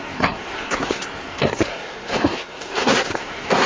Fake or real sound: fake